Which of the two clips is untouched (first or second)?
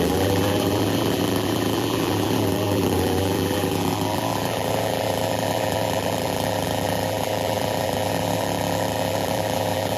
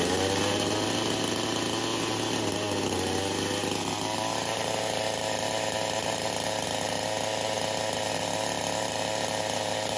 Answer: second